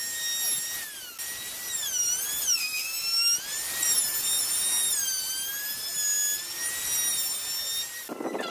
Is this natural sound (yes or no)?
yes